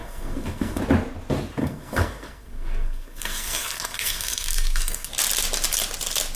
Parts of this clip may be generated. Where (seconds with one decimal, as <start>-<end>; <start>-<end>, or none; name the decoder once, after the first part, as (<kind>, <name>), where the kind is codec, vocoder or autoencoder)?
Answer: 0.0-0.8 (codec, SNAC); 1.6-5.1